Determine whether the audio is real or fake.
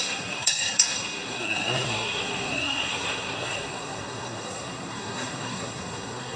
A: fake